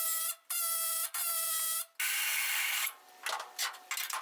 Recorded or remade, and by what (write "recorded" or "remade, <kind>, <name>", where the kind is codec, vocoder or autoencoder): recorded